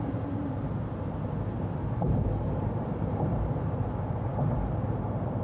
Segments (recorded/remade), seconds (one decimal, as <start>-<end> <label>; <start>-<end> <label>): 0.0-5.4 remade